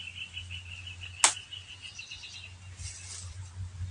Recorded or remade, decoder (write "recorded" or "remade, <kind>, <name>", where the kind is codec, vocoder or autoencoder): recorded